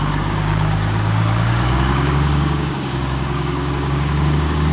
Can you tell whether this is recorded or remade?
remade